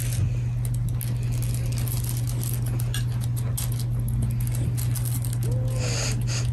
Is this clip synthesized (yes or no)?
no